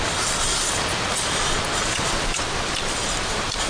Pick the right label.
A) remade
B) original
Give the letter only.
B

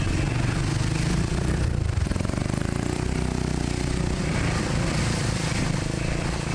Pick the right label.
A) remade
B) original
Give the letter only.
A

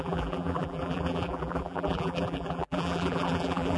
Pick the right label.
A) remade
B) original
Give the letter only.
A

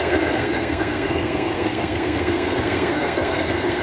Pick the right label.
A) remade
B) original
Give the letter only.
A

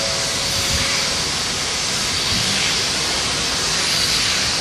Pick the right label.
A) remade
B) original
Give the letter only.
B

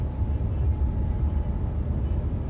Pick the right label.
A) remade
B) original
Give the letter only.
B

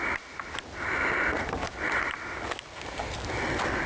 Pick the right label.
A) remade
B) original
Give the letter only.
B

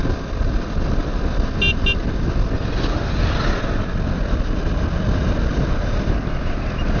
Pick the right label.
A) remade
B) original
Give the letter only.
B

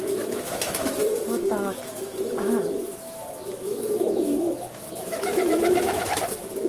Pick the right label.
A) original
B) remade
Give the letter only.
B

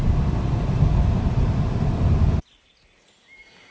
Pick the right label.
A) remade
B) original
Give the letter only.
B